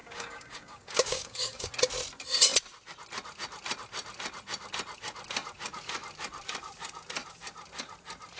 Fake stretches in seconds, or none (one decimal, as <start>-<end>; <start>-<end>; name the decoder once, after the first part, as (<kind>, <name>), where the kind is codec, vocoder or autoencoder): 0.0-1.7 (codec, DAC)